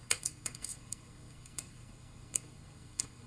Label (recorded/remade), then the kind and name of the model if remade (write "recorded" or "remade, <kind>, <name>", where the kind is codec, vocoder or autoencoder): remade, codec, SNAC